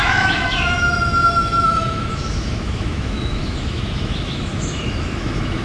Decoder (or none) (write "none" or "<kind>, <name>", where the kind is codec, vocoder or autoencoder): autoencoder, DAC-VAE